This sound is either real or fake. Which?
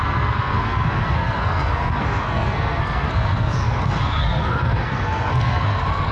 fake